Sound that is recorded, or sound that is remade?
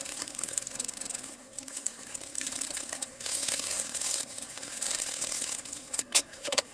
remade